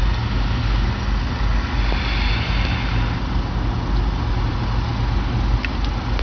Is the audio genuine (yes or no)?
yes